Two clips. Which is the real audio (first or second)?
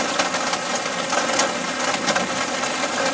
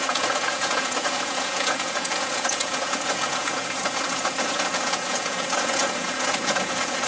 first